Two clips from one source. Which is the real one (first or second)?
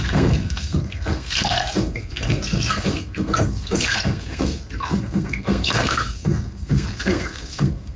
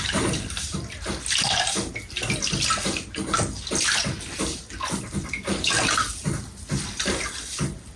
second